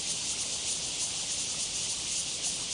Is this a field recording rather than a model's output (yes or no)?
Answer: yes